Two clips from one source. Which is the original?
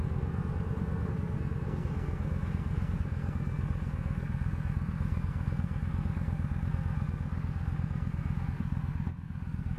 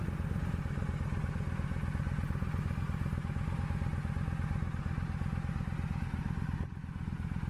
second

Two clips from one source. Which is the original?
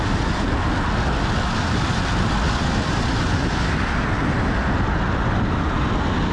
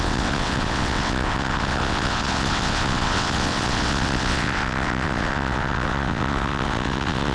first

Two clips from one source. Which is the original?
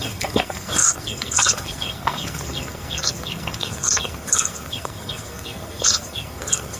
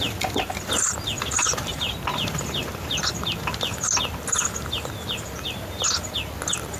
second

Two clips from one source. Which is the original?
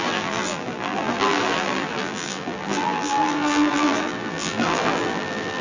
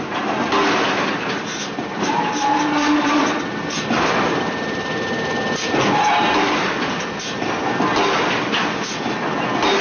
second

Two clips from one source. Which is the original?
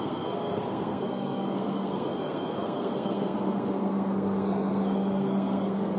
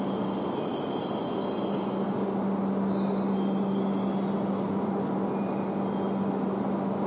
second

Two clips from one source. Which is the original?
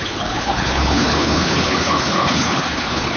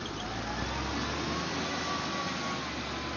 second